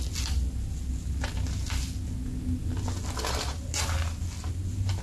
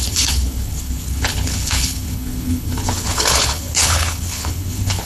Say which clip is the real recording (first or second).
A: first